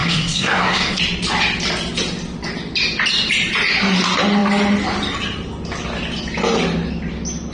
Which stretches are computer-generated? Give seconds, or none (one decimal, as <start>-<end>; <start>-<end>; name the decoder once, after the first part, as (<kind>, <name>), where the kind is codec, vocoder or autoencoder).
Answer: 0.0-1.0 (codec, SNAC)